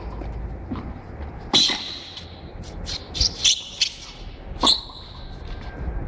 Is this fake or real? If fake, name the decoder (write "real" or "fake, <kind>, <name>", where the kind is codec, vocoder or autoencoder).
real